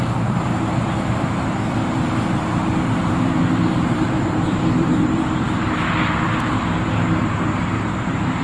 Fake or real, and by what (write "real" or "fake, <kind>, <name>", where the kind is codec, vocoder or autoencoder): fake, vocoder, BigVGAN v2